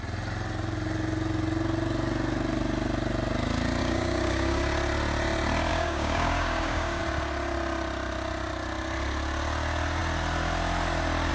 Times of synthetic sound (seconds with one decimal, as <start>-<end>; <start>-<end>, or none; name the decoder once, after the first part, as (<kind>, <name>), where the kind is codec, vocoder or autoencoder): 3.8-4.6 (codec, DAC); 5.7-7.0